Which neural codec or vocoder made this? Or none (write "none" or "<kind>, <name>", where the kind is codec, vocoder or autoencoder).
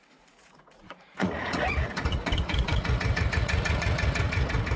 vocoder, Vocos